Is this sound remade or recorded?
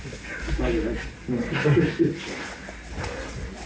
recorded